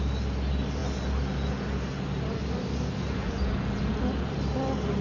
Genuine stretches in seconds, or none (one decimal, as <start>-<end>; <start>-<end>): 0.0-5.0